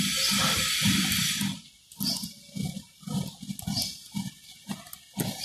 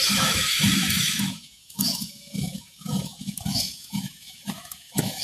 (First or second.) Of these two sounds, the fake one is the second